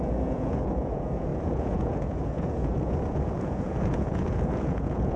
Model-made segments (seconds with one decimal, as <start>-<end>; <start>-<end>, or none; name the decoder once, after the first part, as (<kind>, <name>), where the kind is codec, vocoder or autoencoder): 0.0-5.2 (vocoder, Vocos)